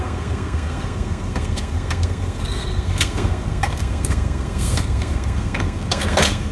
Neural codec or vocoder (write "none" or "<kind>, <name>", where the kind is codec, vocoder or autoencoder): codec, SNAC